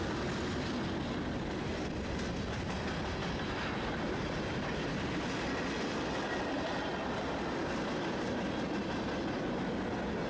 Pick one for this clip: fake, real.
real